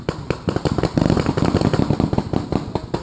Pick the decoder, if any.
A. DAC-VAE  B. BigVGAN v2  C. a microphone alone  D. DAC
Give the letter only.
C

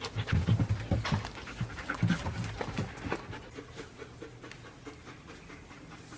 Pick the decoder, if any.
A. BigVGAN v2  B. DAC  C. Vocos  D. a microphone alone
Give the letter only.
D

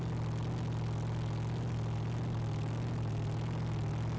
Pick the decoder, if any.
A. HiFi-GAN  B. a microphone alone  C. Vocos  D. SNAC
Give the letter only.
B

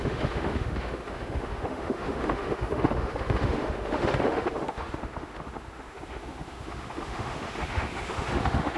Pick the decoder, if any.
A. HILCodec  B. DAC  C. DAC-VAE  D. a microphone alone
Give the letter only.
C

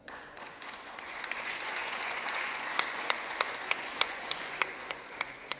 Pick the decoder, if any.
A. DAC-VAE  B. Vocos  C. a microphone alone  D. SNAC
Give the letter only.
B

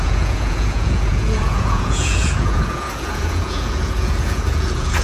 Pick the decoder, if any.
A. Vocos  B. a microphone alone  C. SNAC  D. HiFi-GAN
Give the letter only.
A